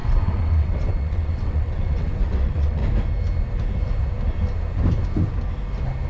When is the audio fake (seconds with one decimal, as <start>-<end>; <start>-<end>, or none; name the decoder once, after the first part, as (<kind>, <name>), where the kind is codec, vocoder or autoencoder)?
0.0-2.8 (vocoder, WaveNeXt)